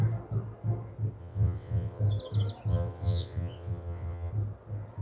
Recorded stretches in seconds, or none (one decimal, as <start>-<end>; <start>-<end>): 0.0-1.2; 2.0-2.7; 4.3-5.0